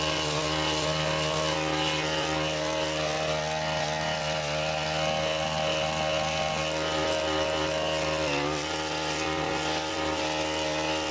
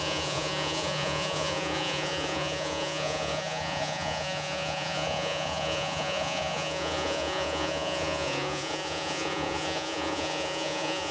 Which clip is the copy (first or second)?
second